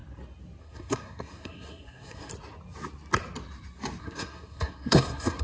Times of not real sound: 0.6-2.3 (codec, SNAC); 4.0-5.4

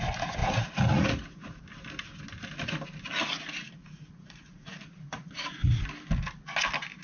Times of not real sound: 0.4-1.6 (vocoder, Vocos); 3.8-5.9

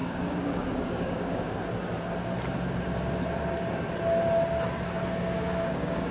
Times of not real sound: 0.0-1.6 (codec, DAC); 5.1-6.1

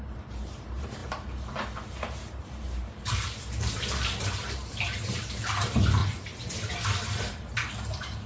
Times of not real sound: 0.0-6.0 (vocoder, BigVGAN v2); 7.3-8.3

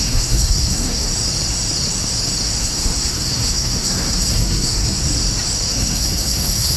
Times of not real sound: 0.0-1.1 (codec, SNAC); 2.6-5.0; 5.7-6.8

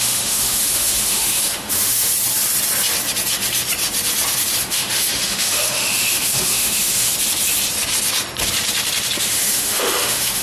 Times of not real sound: 0.0-2.1 (autoencoder, DAC-VAE); 4.6-7.1; 9.2-10.4

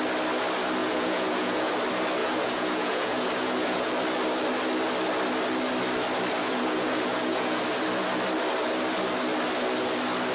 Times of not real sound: 0.8-1.7 (vocoder, Vocos); 2.2-3.9; 6.4-7.6